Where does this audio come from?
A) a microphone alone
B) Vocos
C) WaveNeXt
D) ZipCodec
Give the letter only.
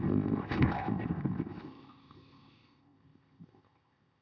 D